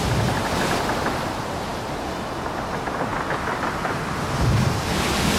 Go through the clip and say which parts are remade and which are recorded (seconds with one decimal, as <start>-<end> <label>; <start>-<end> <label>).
0.0-5.4 recorded